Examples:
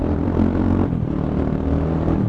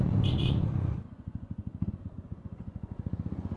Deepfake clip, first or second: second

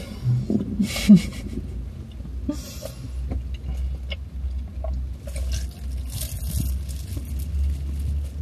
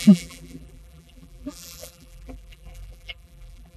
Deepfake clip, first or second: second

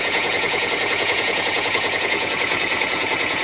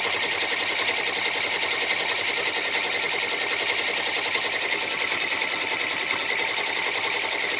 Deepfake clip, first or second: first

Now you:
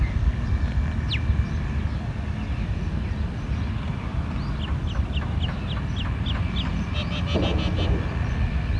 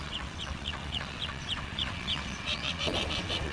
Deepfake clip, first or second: second